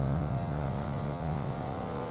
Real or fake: fake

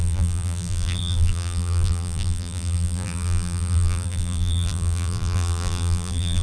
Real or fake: fake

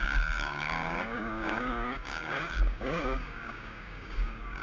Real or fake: fake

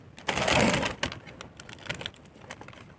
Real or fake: real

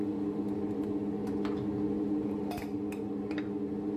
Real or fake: real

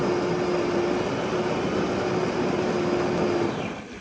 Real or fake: real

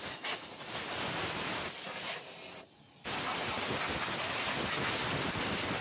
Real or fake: real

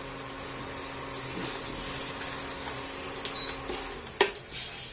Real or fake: real